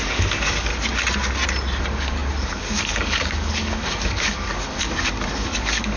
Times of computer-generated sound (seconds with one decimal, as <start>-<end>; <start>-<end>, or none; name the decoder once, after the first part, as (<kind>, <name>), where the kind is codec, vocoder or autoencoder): 0.0-0.7 (codec, DAC); 1.8-6.0